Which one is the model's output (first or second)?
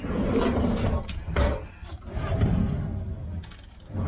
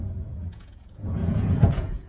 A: second